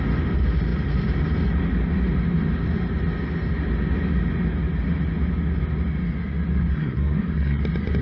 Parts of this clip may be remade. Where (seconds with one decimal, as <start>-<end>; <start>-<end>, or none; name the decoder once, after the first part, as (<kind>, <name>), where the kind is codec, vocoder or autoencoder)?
6.7-7.6 (codec, SNAC)